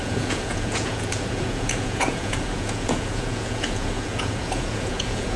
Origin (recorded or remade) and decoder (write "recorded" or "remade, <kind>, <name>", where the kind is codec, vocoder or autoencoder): remade, vocoder, Vocos